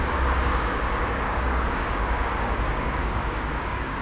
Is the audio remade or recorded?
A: remade